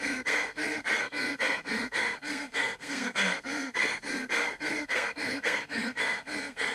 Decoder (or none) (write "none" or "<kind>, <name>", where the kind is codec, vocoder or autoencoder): codec, SNAC